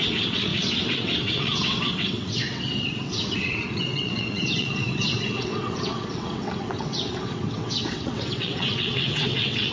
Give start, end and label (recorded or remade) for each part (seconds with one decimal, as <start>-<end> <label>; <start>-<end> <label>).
0.0-9.7 remade